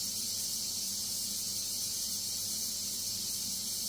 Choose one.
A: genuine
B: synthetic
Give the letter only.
A